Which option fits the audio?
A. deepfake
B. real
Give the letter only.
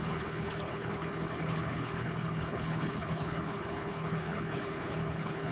A